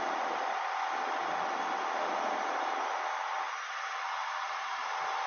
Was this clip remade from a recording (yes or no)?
no